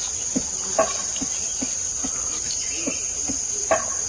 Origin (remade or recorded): recorded